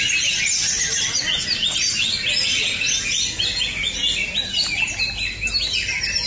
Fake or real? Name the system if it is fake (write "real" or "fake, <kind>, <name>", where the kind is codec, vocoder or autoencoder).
real